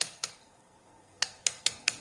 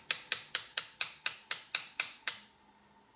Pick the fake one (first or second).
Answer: first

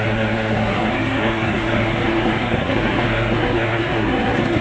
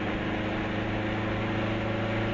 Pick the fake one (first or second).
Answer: first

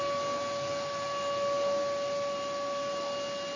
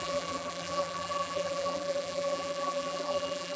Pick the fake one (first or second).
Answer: second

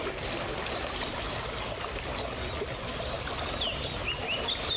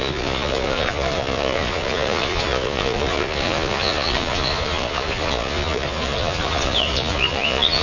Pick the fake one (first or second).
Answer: second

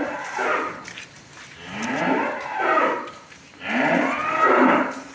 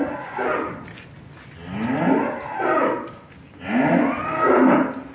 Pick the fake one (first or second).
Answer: first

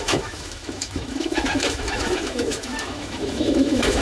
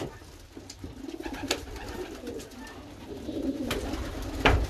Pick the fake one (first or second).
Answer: first